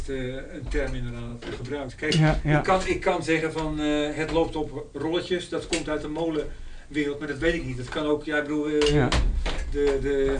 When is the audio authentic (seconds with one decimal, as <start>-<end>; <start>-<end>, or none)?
0.0-10.4

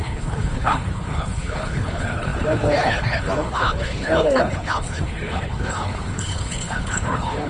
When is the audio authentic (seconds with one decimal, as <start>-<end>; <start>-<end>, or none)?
none

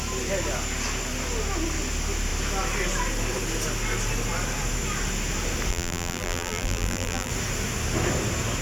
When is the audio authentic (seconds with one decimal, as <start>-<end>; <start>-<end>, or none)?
0.0-5.7; 7.3-8.6

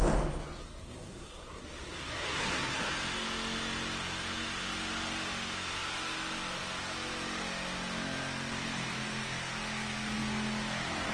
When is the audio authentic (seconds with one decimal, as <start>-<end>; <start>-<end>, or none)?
0.0-0.6; 2.9-11.1